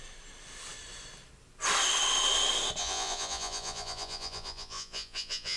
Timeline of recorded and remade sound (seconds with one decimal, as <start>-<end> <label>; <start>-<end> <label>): 0.0-2.8 recorded; 2.8-5.6 remade